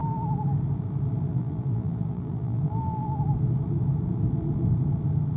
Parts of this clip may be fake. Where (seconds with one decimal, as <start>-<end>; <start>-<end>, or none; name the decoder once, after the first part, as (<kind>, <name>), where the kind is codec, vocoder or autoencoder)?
1.3-3.2 (vocoder, BigVGAN v2)